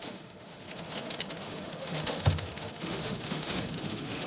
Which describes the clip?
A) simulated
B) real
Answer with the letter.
A